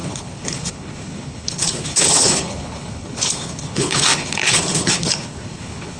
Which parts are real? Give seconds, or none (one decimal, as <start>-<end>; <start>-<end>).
none